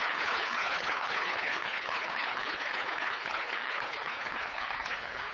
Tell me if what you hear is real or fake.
fake